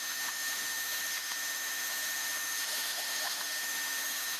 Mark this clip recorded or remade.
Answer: remade